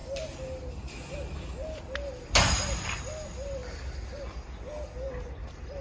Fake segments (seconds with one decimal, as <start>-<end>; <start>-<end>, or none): none